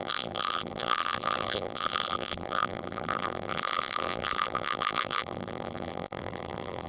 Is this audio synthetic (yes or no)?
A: yes